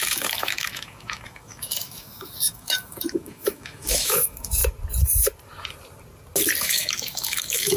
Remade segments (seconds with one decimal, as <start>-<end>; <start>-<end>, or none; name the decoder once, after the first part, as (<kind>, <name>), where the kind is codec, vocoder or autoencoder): 0.0-4.6 (autoencoder, DAC-VAE); 6.6-7.8